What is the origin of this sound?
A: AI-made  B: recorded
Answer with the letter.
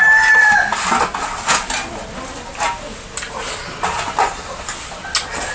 B